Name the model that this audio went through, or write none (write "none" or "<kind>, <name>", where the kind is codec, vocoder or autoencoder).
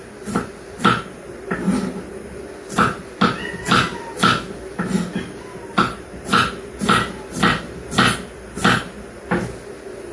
none